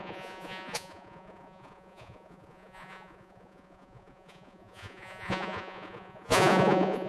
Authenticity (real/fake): fake